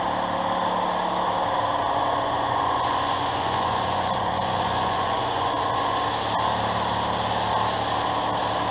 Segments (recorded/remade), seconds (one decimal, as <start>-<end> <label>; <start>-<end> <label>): 0.0-1.8 recorded; 1.8-6.0 remade; 6.0-8.7 recorded